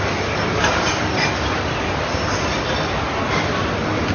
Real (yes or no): yes